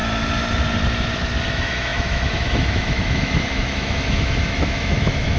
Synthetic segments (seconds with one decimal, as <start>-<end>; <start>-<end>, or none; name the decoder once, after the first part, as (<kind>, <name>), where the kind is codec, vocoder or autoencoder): 1.5-5.4 (autoencoder, DAC-VAE)